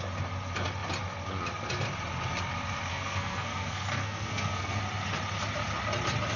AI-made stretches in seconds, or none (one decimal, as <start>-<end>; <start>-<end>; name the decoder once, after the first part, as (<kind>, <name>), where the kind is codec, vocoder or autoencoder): 2.9-4.8 (codec, SNAC)